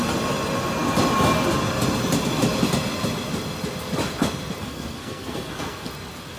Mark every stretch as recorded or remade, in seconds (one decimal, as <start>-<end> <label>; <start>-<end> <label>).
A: 0.0-4.6 recorded; 4.6-5.9 remade; 5.9-6.4 recorded